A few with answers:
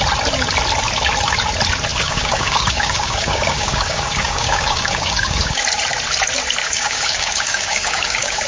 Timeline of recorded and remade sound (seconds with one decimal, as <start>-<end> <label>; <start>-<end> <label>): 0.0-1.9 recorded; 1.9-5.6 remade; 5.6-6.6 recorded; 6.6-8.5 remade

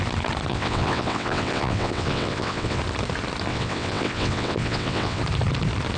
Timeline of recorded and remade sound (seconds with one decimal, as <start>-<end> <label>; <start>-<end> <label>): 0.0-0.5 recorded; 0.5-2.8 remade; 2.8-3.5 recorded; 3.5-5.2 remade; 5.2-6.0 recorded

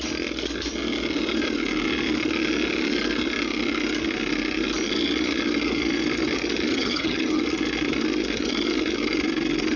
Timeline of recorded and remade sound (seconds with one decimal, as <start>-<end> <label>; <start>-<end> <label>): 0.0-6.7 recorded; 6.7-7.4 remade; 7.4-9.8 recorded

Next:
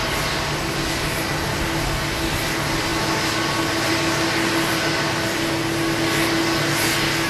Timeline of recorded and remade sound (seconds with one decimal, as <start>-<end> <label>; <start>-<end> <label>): 0.0-7.3 recorded